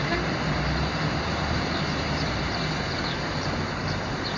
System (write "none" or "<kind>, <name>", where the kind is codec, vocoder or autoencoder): vocoder, BigVGAN v2